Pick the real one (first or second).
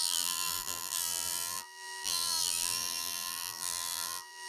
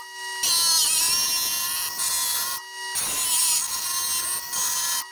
second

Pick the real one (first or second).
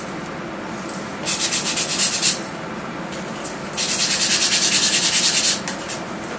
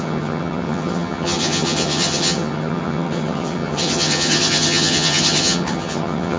first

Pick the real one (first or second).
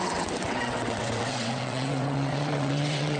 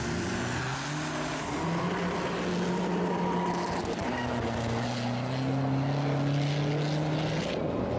second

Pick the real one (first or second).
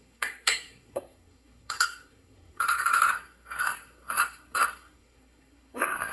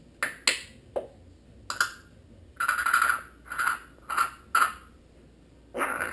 second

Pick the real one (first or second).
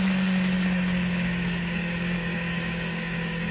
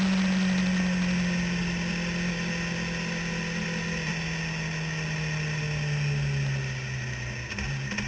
second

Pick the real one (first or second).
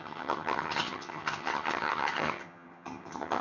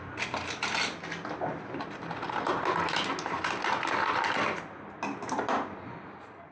second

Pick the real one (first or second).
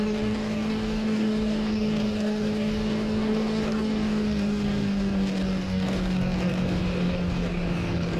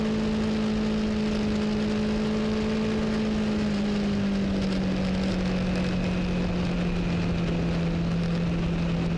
second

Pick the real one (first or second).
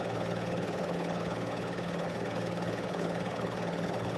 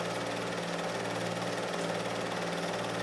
second